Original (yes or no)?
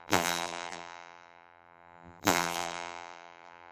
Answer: no